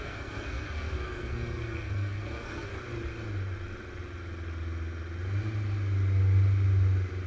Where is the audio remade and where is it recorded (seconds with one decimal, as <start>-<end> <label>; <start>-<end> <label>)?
0.0-2.7 remade; 2.7-7.3 recorded